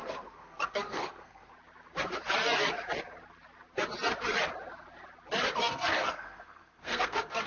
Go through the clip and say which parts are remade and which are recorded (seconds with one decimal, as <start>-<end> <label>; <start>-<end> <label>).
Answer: 0.0-1.5 remade; 1.5-5.5 recorded; 5.5-7.5 remade